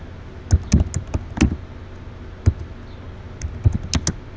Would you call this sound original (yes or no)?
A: yes